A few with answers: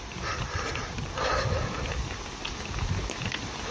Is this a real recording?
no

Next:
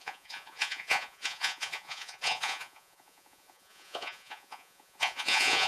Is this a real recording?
no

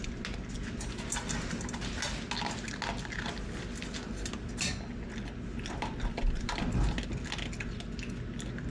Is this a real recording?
yes